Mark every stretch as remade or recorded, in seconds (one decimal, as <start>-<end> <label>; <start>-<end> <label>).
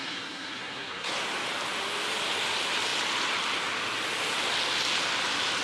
0.0-1.1 remade; 1.1-5.6 recorded